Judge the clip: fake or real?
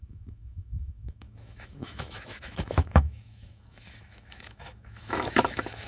fake